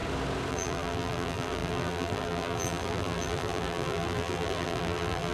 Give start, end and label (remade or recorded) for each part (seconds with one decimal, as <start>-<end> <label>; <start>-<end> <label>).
0.0-0.5 recorded; 0.5-5.3 remade